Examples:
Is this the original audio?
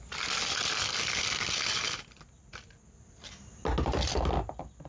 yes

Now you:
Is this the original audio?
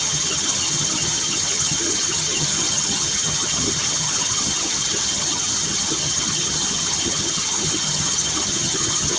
no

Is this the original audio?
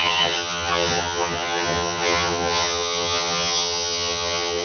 no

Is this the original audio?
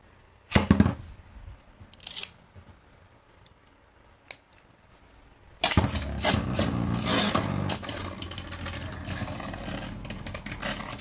yes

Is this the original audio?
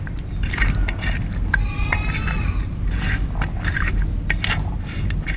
yes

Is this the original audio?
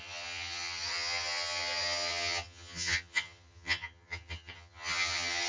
no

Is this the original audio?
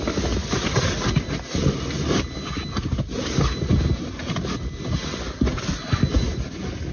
yes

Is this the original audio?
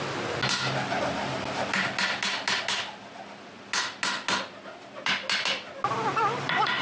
yes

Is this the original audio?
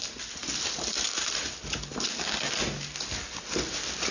yes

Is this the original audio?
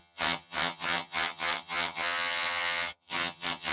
no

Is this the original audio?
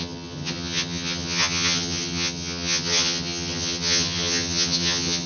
no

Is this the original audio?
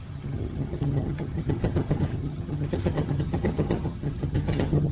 no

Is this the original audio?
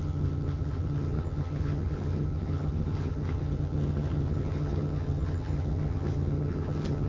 no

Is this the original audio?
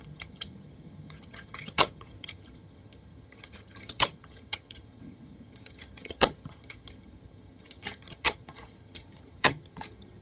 no